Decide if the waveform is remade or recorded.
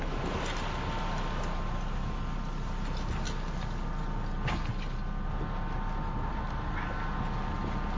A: recorded